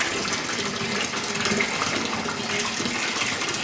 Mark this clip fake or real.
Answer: real